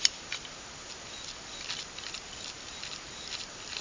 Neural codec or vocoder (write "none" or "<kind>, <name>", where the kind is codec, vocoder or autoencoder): none